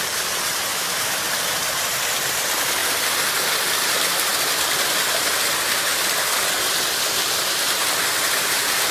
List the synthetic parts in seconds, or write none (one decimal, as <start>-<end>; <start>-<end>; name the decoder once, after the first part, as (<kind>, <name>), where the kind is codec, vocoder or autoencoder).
0.7-1.2 (autoencoder, DAC-VAE)